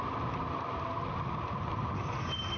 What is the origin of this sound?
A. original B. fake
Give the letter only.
A